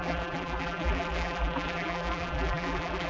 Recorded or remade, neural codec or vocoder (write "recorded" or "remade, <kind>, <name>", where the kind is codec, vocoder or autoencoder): remade, vocoder, BigVGAN v2